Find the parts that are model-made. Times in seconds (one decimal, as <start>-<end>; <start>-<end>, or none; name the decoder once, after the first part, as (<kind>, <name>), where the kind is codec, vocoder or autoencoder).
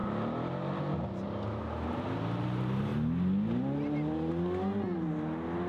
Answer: none